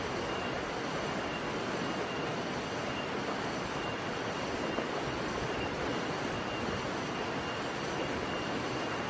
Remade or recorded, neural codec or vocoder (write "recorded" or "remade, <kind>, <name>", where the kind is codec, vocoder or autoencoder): recorded